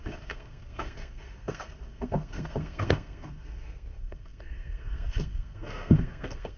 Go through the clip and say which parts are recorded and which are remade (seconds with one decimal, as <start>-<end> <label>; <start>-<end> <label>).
0.0-6.6 remade